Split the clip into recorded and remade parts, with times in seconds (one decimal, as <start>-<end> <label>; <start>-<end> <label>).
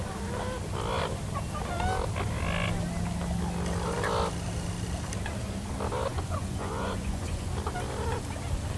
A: 0.0-6.1 recorded; 6.1-7.5 remade; 7.5-8.8 recorded